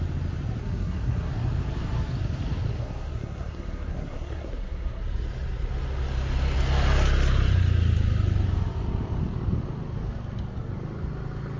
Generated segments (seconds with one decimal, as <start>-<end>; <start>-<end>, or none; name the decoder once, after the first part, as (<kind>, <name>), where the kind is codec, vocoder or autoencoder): 0.6-1.3 (codec, SNAC); 2.7-5.0